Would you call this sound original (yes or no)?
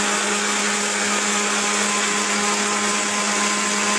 yes